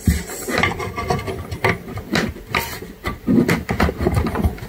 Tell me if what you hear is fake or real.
real